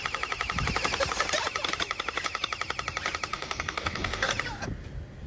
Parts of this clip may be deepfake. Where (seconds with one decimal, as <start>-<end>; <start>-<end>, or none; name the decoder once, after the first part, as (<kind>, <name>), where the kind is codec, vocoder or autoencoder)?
3.3-4.3 (codec, DAC)